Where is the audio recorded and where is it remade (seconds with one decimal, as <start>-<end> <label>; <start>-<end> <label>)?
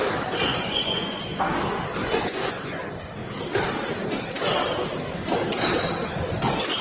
0.0-0.5 recorded; 0.5-1.4 remade; 1.4-2.0 recorded; 2.0-2.8 remade; 2.8-6.8 recorded